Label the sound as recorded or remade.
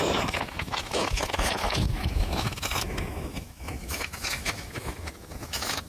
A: remade